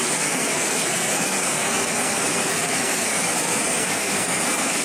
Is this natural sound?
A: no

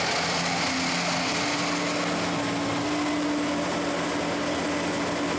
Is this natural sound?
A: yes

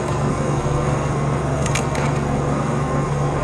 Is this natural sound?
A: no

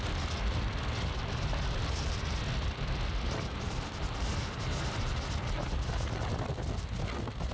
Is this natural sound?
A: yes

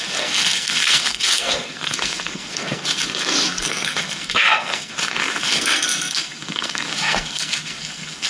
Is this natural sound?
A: no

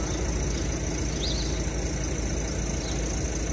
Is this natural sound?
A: yes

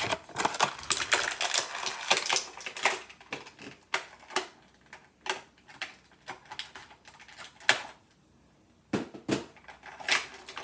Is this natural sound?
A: yes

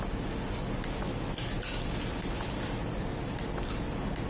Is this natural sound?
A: yes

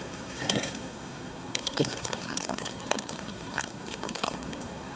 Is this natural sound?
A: no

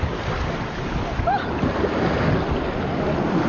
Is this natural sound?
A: yes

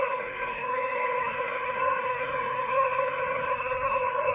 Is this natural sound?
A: no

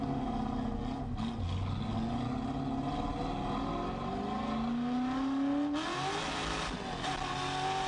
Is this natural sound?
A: yes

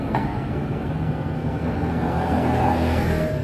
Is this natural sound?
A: no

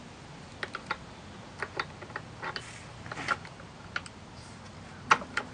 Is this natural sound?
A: yes